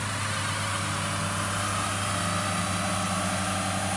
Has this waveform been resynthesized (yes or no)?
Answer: no